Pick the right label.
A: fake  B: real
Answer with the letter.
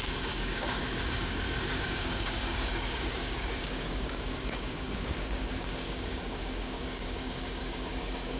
A